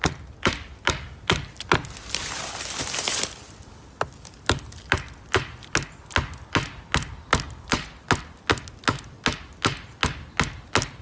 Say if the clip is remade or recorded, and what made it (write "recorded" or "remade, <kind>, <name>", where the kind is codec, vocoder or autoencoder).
recorded